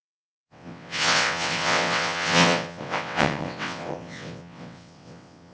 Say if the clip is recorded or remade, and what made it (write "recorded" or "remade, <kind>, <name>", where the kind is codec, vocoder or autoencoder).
remade, vocoder, WaveNeXt